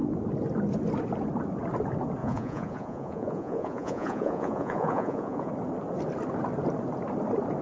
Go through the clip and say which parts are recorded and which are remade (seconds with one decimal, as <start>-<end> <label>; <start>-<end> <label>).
0.0-2.2 recorded; 2.2-5.5 remade; 5.5-7.6 recorded